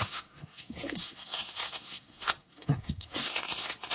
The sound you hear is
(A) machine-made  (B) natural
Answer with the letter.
A